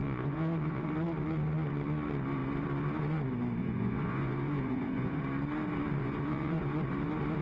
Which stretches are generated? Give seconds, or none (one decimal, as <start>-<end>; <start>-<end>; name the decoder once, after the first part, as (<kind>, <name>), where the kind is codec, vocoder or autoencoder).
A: 0.0-0.9 (vocoder, Vocos); 3.6-5.2; 6.0-6.8